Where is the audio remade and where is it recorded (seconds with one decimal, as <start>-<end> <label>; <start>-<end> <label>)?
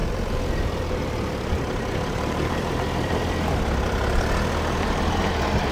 0.0-3.1 remade; 3.1-5.7 recorded